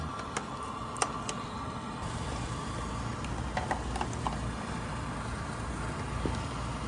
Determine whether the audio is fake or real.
real